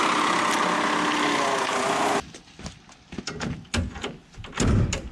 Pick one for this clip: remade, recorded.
recorded